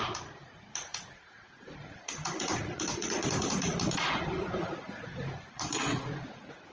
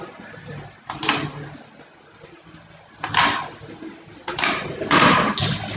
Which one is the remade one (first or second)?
first